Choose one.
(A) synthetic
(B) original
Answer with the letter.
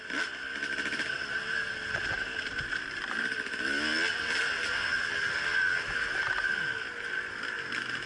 B